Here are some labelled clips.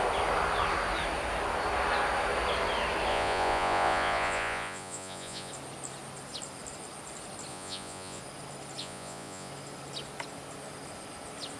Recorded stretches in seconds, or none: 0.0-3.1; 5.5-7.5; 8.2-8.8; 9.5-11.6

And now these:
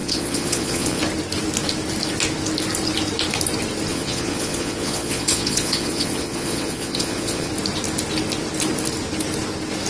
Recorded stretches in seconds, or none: 1.0-3.9; 7.5-9.9

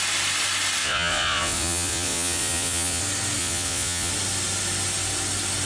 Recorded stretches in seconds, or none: 0.0-0.8; 3.0-3.4; 4.1-5.7

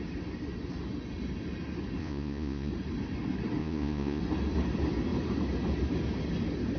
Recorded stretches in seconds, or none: 0.0-2.0; 2.7-3.6; 4.2-6.8

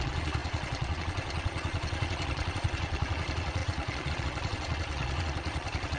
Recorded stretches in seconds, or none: none

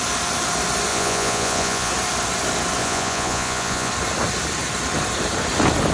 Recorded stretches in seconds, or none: 0.0-0.9; 1.9-2.8; 3.9-5.9

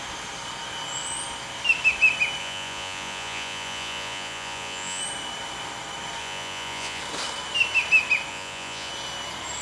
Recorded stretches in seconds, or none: 0.0-2.4; 5.0-6.2; 7.0-8.3; 8.9-9.6